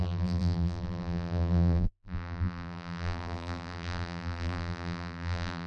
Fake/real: fake